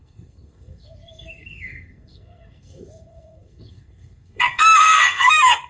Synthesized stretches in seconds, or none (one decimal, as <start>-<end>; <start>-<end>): 0.0-5.7